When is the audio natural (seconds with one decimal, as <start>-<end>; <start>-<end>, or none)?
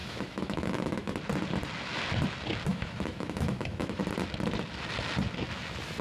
1.2-2.7; 4.0-6.0